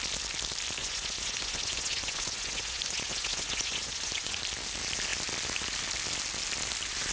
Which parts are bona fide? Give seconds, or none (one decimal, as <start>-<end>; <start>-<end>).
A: 0.0-0.8; 4.4-7.1